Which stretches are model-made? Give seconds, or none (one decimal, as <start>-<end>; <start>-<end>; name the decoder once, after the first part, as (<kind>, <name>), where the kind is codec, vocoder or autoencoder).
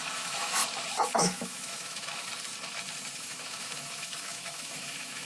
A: 0.0-0.6 (autoencoder, DAC-VAE); 1.2-2.3; 3.2-5.3